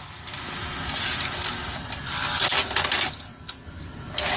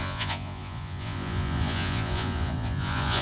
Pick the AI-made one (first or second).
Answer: second